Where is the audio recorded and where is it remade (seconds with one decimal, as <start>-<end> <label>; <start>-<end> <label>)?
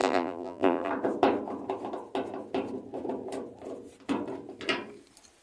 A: 0.0-0.9 remade; 0.9-5.4 recorded